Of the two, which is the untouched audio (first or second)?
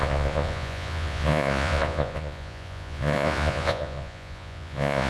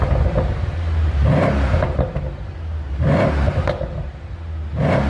second